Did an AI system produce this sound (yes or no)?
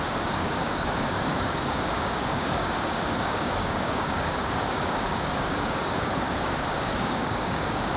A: yes